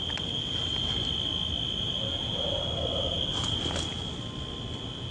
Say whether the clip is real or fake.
real